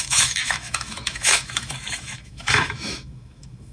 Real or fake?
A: fake